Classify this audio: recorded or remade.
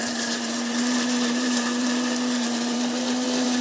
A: remade